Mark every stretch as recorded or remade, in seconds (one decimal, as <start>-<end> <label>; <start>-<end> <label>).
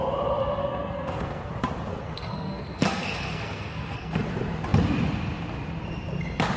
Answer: 0.0-0.6 recorded; 0.6-1.5 remade; 1.5-1.9 recorded; 1.9-4.3 remade; 4.3-6.6 recorded